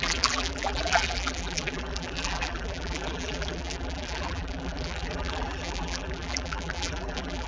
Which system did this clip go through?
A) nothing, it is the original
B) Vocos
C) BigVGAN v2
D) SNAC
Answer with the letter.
C